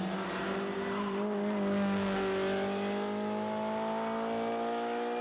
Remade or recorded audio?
recorded